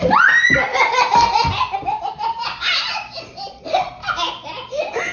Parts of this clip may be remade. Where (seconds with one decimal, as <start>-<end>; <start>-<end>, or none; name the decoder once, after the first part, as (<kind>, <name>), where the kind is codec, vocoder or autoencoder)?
none